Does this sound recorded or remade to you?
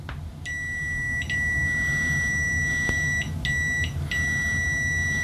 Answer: recorded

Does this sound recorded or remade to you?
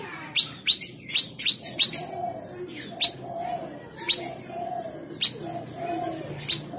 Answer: recorded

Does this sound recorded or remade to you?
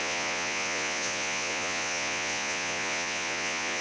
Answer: remade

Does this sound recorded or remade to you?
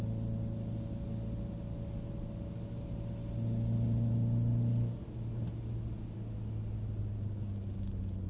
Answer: recorded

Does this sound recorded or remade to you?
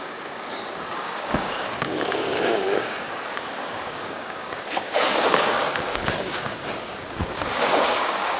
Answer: remade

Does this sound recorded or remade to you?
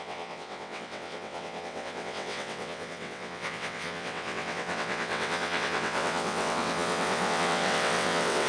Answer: remade